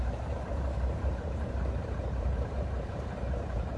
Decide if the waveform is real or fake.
fake